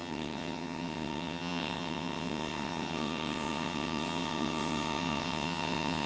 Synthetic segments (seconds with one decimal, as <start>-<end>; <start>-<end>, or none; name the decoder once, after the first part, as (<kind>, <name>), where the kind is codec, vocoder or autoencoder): 0.0-6.1 (vocoder, WaveNeXt)